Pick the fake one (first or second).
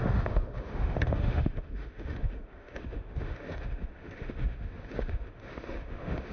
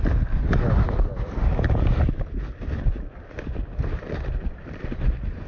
first